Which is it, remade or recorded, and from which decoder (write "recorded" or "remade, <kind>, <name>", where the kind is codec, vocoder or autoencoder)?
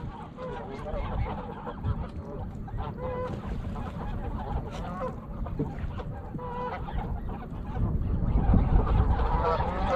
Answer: recorded